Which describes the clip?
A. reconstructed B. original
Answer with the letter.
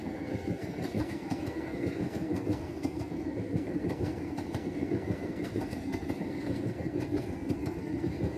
A